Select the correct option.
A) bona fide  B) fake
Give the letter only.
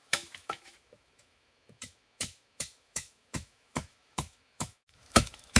B